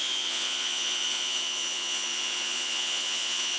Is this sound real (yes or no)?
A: no